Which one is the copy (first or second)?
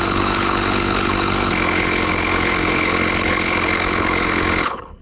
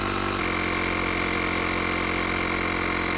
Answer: first